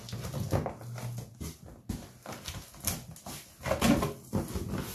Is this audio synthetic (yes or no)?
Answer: no